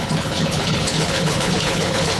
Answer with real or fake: fake